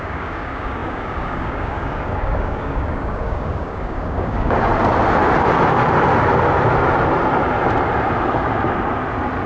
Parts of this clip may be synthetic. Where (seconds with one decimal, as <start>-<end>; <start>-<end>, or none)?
0.0-4.7